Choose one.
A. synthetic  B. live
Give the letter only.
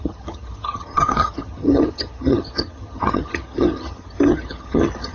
A